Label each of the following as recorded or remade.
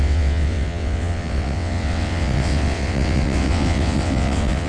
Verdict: remade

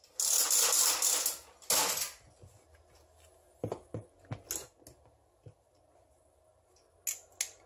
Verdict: recorded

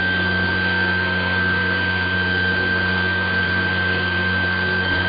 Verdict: remade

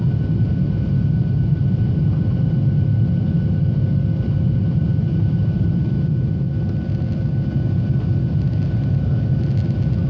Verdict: recorded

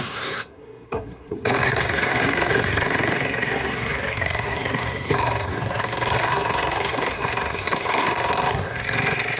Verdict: remade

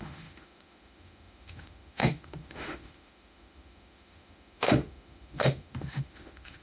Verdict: remade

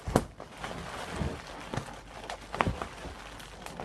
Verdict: recorded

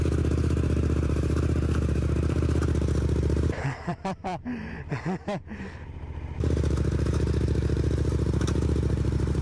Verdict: remade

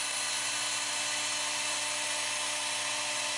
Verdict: recorded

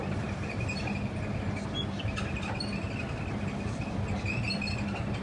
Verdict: recorded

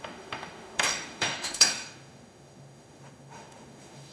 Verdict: remade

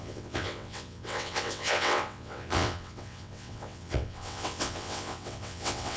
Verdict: remade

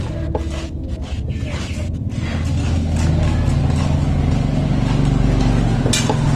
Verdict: recorded